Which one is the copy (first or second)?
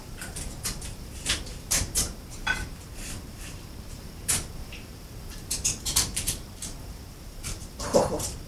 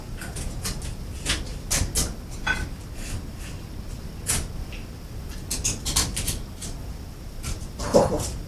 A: first